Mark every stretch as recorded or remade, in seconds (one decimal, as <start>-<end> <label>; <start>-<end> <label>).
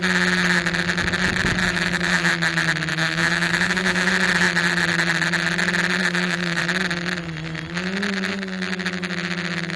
0.0-1.6 recorded; 1.6-2.3 remade; 2.3-2.9 recorded; 2.9-4.1 remade; 4.1-6.0 recorded; 6.0-6.6 remade; 6.6-9.8 recorded